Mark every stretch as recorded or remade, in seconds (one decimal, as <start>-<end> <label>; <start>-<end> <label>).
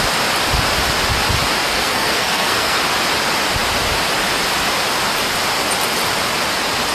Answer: 0.0-1.6 recorded; 1.6-2.8 remade; 2.8-6.9 recorded